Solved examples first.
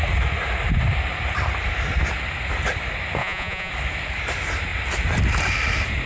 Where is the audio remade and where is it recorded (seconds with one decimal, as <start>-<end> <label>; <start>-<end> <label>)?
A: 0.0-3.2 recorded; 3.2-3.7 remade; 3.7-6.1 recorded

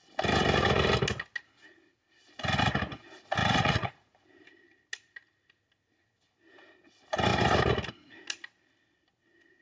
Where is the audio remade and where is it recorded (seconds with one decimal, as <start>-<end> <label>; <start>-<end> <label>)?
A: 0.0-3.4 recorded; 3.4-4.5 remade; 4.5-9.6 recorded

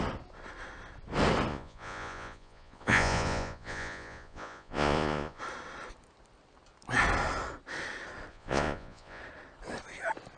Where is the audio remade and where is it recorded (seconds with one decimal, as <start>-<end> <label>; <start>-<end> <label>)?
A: 0.0-1.5 recorded; 1.5-5.4 remade; 5.4-8.3 recorded; 8.3-9.2 remade; 9.2-10.4 recorded

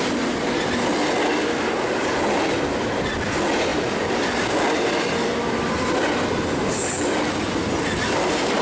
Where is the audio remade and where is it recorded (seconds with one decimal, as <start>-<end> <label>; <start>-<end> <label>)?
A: 0.0-8.6 recorded